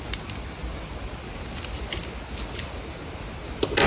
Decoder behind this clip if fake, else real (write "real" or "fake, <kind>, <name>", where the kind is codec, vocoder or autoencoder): real